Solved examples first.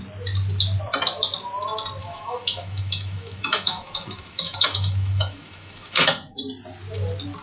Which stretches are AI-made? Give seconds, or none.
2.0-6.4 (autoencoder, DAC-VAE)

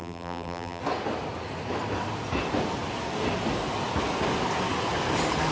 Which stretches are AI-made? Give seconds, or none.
0.0-0.8 (vocoder, BigVGAN v2)

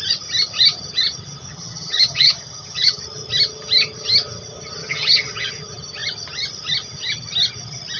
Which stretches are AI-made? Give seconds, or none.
1.5-3.0 (vocoder, HiFi-GAN); 4.8-5.5

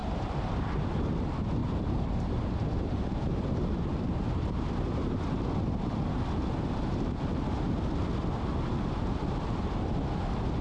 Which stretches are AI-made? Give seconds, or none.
0.0-1.1 (vocoder, BigVGAN v2); 1.6-5.5

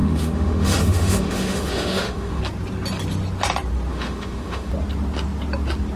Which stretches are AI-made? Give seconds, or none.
0.0-2.4 (autoencoder, DAC-VAE); 3.9-4.7